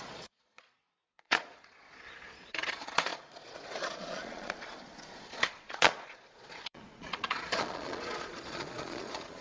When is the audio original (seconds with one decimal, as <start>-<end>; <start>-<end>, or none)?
none